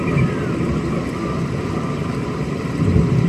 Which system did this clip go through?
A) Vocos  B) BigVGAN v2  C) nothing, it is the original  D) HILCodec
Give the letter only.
C